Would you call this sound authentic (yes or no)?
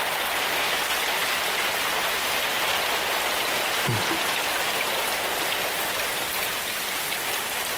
yes